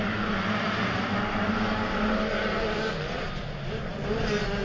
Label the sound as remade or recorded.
recorded